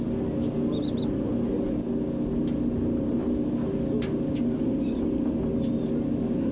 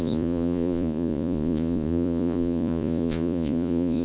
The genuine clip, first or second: first